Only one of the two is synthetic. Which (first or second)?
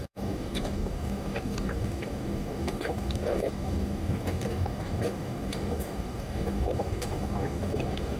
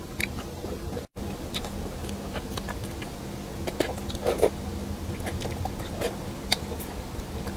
first